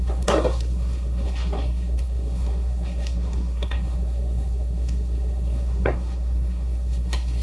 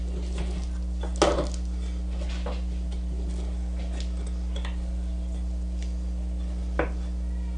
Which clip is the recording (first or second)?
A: second